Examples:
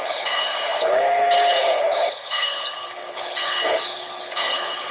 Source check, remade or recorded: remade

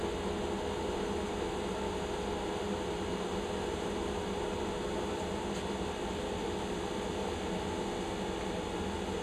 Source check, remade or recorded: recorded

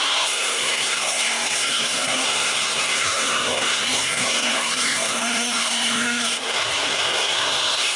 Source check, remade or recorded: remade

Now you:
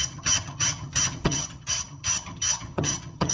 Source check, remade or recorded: remade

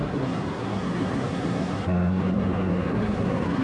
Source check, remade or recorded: remade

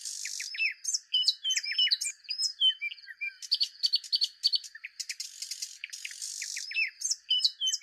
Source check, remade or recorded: recorded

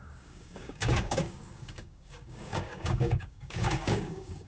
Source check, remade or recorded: remade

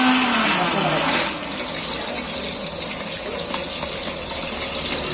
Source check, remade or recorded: recorded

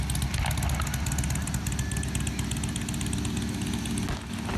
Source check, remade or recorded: recorded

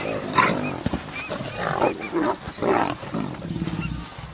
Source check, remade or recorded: recorded